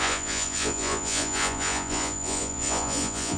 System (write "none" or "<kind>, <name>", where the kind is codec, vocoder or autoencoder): vocoder, Vocos